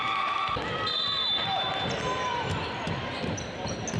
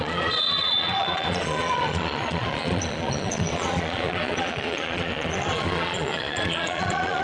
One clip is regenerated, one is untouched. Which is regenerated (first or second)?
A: second